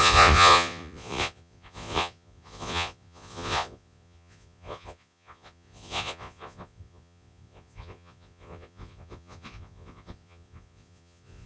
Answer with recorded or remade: remade